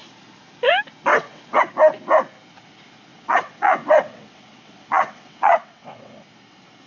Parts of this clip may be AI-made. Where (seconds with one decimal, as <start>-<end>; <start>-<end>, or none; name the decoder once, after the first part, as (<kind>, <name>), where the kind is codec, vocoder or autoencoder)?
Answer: 1.1-1.6 (vocoder, WaveNeXt); 3.1-6.2